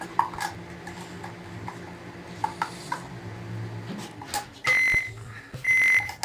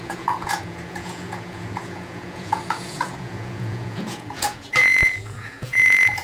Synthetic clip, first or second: second